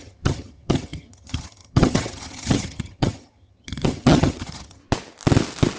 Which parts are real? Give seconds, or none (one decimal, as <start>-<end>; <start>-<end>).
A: 4.8-5.8

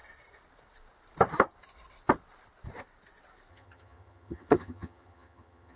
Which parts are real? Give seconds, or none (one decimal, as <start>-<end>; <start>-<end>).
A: 0.0-3.5